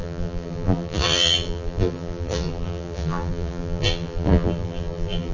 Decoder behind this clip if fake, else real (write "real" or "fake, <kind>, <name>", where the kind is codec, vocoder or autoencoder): fake, vocoder, BigVGAN v2